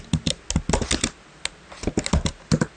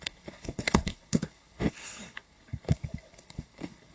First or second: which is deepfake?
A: second